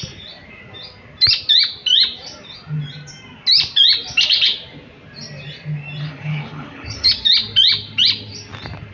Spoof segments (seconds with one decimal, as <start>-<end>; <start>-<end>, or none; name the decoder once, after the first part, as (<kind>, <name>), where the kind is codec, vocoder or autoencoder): 6.0-7.1 (codec, HILCodec)